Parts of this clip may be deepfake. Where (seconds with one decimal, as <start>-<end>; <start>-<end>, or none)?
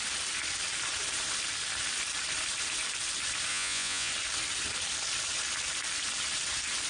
3.5-4.1